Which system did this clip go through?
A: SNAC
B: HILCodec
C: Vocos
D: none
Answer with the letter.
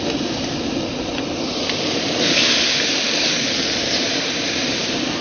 D